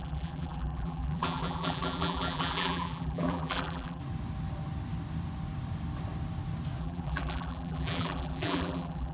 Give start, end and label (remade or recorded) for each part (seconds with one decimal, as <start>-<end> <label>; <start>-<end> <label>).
0.0-4.0 remade; 4.0-6.8 recorded; 6.8-9.1 remade